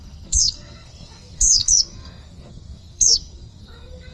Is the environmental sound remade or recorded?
remade